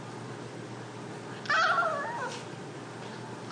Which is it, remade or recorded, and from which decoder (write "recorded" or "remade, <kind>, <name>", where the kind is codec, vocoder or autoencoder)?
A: recorded